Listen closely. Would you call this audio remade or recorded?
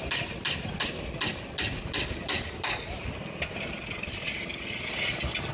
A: recorded